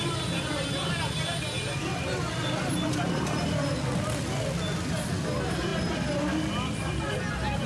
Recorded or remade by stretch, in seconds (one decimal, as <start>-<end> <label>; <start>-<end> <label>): 0.0-7.7 recorded